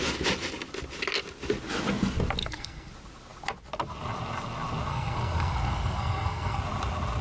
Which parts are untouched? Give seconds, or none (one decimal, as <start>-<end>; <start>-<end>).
0.0-2.4; 2.9-4.9; 6.6-7.2